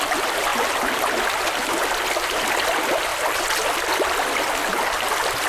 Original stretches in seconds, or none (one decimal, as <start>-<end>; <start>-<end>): 0.0-5.5